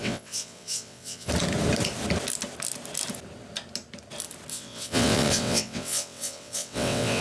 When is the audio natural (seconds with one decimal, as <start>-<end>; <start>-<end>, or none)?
1.3-4.5